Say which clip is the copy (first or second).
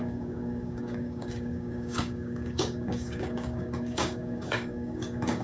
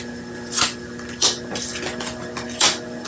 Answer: first